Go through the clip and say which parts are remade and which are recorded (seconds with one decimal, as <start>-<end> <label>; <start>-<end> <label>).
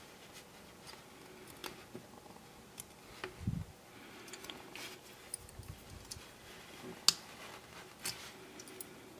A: 0.0-9.2 recorded